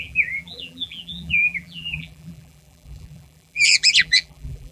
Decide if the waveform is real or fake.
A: fake